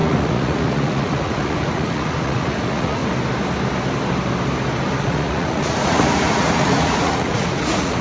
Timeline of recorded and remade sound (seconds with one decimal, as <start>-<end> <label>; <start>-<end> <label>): 0.0-3.0 remade; 3.0-5.0 recorded; 5.0-8.0 remade